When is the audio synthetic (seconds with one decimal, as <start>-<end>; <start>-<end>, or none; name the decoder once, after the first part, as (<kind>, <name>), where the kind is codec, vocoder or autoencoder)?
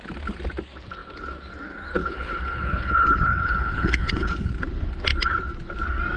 2.0-4.5 (codec, HILCodec)